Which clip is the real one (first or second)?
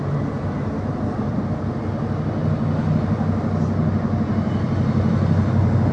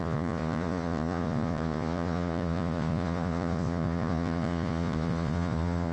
first